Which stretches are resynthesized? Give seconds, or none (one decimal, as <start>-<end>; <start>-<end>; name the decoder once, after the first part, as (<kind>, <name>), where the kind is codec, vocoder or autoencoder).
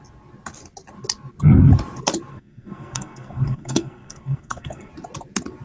2.3-4.9 (codec, SNAC)